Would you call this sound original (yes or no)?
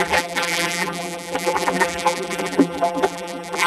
no